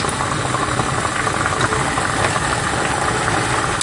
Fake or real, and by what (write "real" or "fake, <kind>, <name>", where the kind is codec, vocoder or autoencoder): real